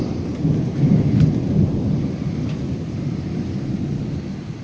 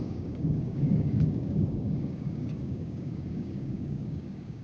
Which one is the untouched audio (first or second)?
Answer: first